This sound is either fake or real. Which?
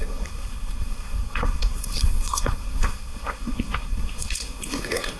fake